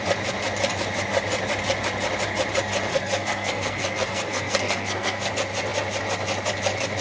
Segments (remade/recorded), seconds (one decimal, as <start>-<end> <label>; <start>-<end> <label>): 0.0-2.9 recorded; 2.9-5.3 remade; 5.3-7.0 recorded